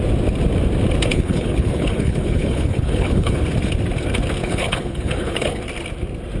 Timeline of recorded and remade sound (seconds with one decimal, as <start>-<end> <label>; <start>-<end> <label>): 0.0-1.1 recorded; 1.1-3.4 remade; 3.4-4.4 recorded; 4.4-5.6 remade; 5.6-6.4 recorded